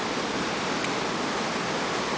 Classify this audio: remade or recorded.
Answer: recorded